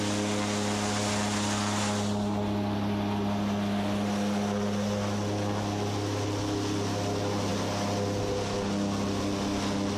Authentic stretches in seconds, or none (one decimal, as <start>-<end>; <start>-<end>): 0.0-10.0